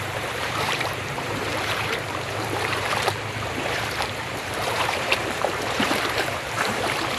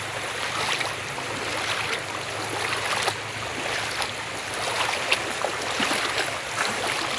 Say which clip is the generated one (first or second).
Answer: first